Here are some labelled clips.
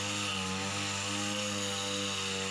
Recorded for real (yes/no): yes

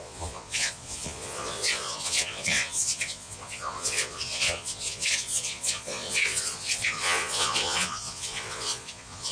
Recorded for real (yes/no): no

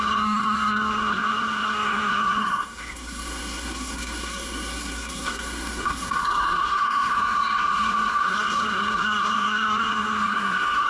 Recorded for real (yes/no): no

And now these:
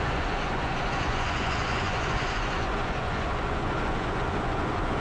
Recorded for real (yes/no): no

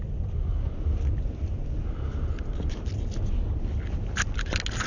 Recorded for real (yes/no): yes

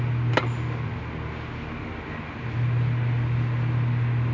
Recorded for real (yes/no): yes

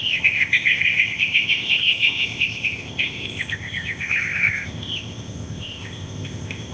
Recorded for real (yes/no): no